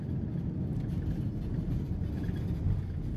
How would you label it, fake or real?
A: real